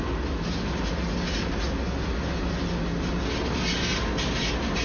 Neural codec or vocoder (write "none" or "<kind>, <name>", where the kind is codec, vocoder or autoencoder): none